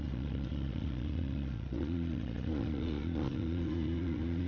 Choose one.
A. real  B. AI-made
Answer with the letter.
B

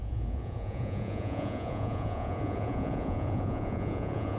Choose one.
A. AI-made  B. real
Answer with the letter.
A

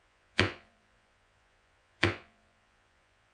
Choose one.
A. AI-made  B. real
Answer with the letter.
A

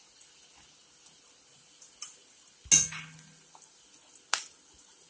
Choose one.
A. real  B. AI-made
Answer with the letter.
A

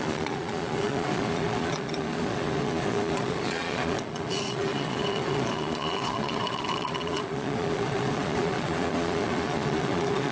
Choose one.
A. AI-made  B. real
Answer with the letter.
A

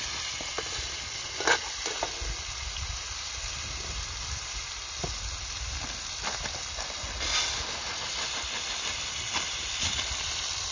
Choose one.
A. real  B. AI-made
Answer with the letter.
A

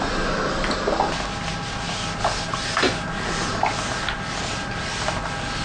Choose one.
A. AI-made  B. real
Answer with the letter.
B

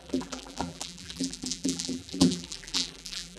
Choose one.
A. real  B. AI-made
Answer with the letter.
B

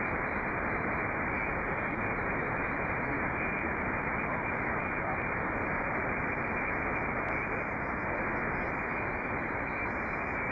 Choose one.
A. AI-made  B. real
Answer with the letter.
B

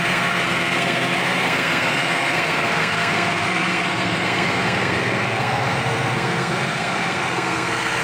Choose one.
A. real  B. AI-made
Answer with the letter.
B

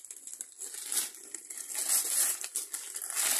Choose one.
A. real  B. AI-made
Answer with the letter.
A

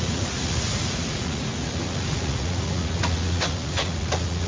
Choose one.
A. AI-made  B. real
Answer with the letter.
A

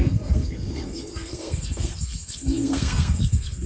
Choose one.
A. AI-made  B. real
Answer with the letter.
A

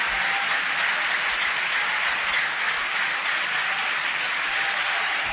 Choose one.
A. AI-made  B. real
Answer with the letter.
B